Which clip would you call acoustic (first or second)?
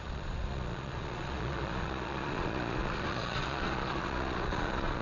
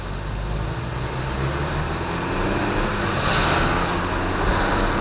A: second